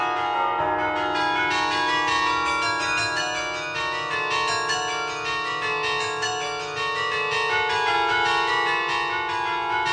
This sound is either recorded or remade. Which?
recorded